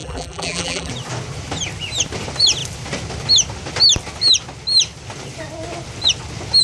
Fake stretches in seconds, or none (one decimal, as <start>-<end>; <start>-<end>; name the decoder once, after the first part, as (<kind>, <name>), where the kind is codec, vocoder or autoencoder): 0.0-0.9 (vocoder, BigVGAN v2)